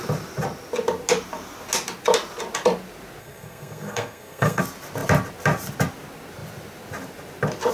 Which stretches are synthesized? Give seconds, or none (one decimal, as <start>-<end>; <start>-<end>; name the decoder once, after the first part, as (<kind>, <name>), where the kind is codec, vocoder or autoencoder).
3.2-4.6 (codec, SNAC)